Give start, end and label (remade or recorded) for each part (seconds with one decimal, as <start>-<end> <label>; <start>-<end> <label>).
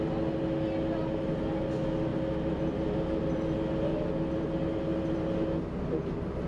0.0-6.5 recorded